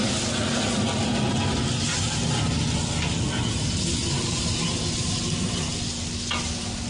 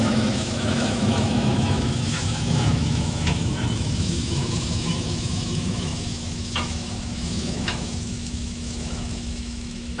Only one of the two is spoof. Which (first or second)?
second